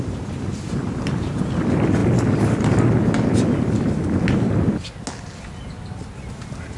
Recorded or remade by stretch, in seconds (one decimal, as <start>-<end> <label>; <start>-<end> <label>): 0.0-6.8 recorded